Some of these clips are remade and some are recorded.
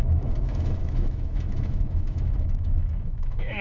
remade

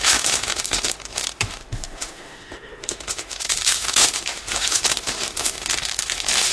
remade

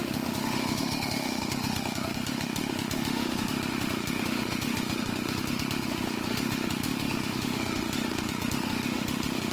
remade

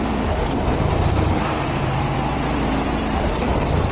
recorded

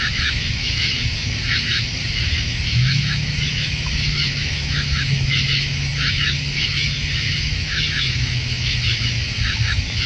remade